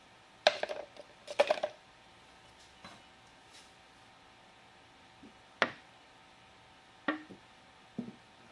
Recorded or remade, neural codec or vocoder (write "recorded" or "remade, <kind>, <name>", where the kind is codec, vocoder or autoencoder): recorded